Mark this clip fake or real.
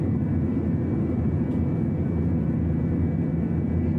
fake